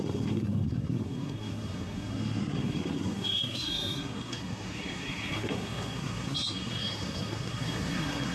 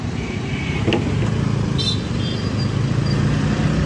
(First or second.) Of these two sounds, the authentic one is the second